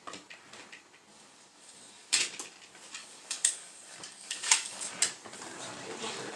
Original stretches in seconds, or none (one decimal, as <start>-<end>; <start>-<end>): 0.0-1.1; 2.2-3.0; 4.9-6.4